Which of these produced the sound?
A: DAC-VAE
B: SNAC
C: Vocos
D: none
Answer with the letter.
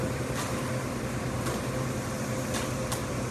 D